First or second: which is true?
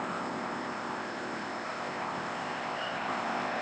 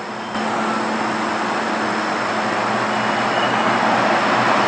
second